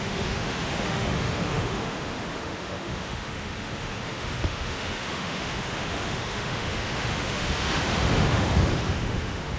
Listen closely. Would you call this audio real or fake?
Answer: fake